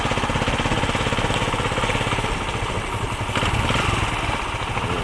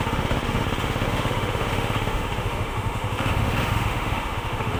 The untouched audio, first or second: first